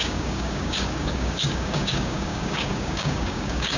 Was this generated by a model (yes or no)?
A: yes